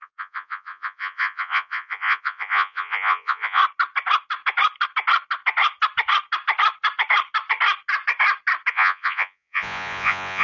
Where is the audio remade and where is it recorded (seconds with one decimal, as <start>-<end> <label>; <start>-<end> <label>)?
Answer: 0.0-3.6 remade; 3.6-8.7 recorded; 8.7-10.4 remade